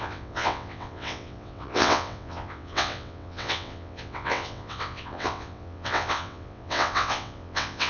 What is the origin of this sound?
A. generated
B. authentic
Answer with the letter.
A